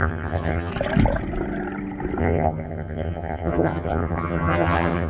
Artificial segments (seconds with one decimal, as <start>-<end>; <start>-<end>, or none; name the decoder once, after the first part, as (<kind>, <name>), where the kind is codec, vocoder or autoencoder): 0.0-0.7 (vocoder, HiFi-GAN); 2.2-5.1